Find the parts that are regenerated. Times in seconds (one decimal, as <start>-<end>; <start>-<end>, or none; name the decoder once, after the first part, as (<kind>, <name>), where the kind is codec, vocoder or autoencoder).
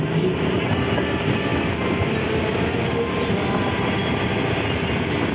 none